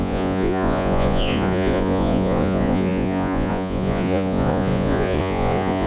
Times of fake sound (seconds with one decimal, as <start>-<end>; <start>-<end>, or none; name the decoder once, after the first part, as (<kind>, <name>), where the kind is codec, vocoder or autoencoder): 0.0-5.9 (vocoder, Vocos)